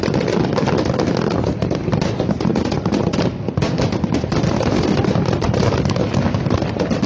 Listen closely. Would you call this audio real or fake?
real